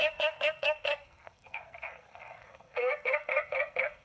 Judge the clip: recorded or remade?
remade